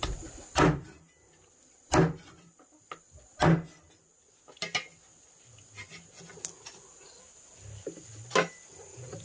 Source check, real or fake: real